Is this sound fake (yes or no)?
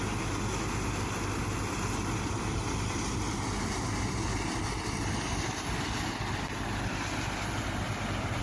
no